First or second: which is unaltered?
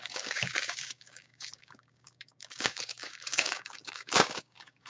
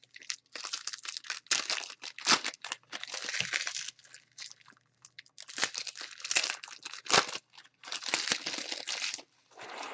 second